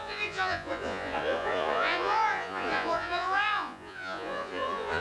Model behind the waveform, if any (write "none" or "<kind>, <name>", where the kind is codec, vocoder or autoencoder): vocoder, Vocos